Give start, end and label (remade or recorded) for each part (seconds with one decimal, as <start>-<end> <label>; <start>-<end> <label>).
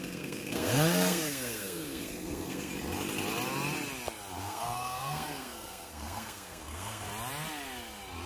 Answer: 0.0-2.7 remade; 2.7-4.4 recorded; 4.4-7.1 remade; 7.1-8.3 recorded